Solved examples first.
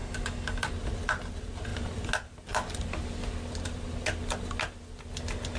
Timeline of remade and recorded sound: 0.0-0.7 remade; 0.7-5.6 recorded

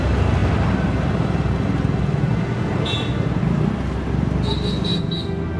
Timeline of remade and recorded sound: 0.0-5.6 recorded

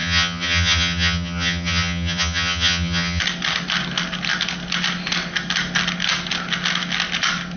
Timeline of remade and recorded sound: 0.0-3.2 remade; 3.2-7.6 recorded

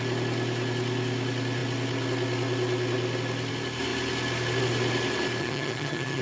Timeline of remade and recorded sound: 0.0-5.4 recorded; 5.4-6.2 remade